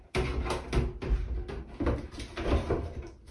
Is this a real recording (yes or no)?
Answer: yes